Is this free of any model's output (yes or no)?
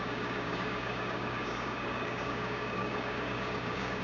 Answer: no